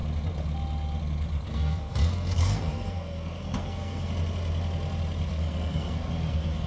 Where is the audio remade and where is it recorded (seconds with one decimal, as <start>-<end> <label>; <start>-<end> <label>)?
0.0-1.5 recorded; 1.5-4.1 remade; 4.1-5.3 recorded; 5.3-6.7 remade